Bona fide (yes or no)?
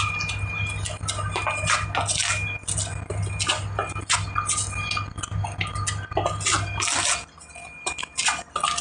yes